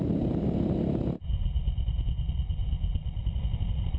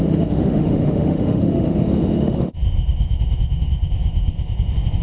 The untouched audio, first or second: first